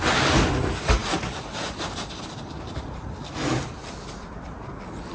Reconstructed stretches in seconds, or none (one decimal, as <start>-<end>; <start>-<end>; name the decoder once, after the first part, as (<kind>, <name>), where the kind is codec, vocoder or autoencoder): none

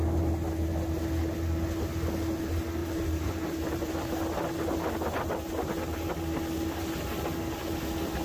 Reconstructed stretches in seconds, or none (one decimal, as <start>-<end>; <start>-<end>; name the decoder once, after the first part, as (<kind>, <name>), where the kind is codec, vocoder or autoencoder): 2.8-3.9 (vocoder, BigVGAN v2)

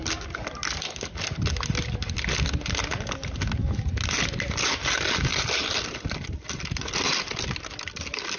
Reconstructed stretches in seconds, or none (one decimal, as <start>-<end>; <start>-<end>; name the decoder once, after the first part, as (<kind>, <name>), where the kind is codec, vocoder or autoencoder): none

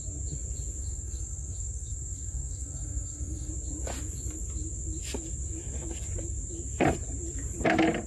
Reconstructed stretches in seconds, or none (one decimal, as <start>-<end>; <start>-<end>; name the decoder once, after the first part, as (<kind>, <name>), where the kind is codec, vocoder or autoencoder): 0.8-3.5 (codec, SNAC)

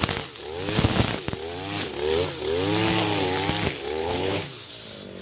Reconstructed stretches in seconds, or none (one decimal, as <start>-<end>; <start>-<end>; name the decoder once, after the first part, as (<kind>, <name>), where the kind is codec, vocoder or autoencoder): 4.0-4.7 (codec, HILCodec)